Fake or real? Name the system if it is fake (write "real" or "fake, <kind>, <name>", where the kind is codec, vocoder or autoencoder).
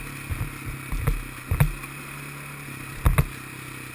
real